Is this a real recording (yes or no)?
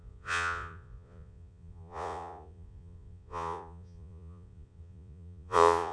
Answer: no